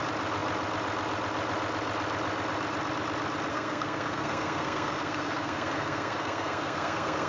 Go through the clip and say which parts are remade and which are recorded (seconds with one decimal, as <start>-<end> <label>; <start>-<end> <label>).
0.0-3.5 recorded; 3.5-7.3 remade